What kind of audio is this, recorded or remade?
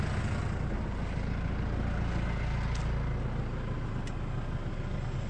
recorded